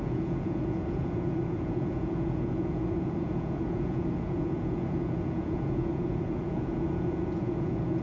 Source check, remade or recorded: remade